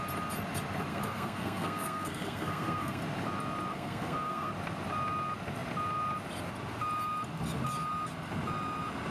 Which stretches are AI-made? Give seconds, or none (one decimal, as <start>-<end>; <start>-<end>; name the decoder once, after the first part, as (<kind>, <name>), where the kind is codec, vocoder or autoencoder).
0.9-3.0 (codec, SNAC); 3.7-4.5